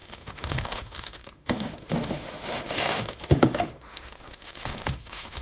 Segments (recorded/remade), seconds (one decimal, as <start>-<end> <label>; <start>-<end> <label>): 0.0-5.4 remade